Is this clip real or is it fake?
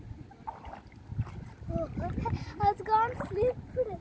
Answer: real